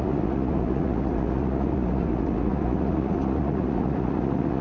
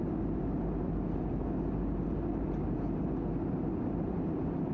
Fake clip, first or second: first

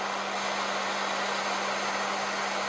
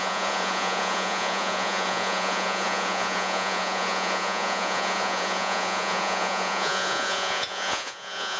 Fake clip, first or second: second